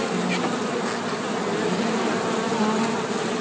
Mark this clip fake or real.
real